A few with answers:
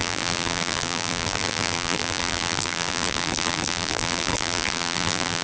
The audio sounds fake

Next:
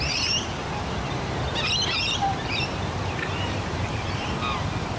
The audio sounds fake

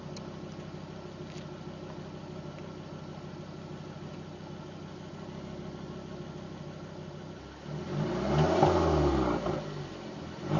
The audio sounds real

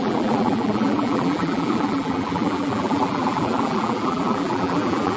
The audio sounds fake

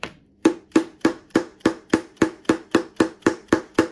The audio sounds fake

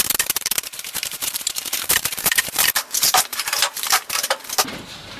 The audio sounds fake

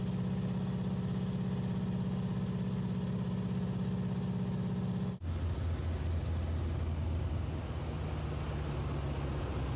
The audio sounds real